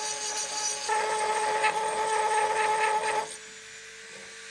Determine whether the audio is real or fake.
real